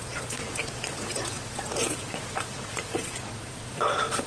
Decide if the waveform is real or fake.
fake